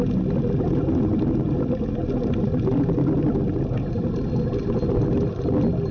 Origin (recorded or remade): recorded